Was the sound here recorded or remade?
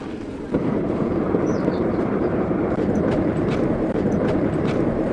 remade